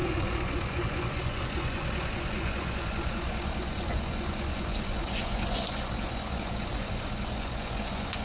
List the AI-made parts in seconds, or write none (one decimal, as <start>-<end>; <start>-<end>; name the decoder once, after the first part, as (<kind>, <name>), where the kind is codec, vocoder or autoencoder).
0.0-8.2 (vocoder, Vocos)